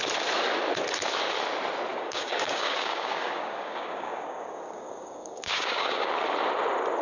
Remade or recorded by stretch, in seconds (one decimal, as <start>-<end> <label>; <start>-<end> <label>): 0.0-1.9 recorded; 1.9-6.1 remade; 6.1-7.0 recorded